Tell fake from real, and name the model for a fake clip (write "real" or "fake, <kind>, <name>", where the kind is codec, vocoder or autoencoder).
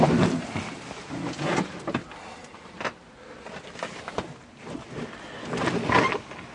real